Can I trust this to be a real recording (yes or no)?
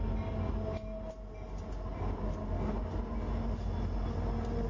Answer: yes